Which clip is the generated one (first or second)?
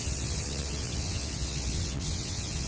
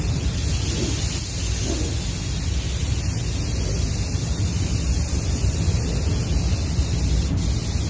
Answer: first